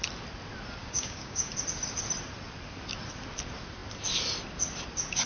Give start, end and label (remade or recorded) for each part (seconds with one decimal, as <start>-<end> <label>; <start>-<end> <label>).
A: 0.0-0.8 recorded; 0.8-1.5 remade; 1.5-5.3 recorded